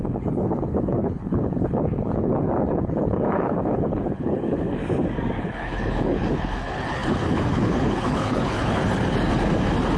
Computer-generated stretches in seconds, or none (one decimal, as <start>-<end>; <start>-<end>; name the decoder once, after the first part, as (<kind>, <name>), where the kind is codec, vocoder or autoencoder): 0.0-4.8 (codec, HILCodec); 5.4-8.8